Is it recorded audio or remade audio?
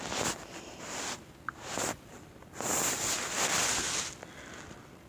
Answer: recorded